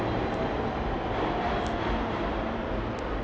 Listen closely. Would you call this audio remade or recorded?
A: recorded